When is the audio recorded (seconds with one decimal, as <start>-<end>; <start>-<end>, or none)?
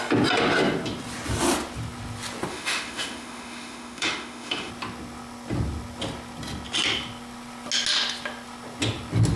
0.0-2.5; 4.7-9.4